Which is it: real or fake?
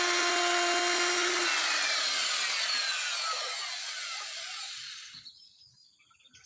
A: real